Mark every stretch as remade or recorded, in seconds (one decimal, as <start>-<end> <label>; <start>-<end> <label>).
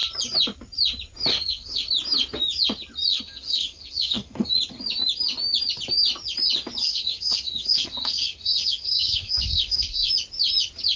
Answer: 0.0-1.3 recorded; 1.3-1.9 remade; 1.9-3.1 recorded; 3.1-4.5 remade; 4.5-6.8 recorded; 6.8-10.1 remade; 10.1-11.0 recorded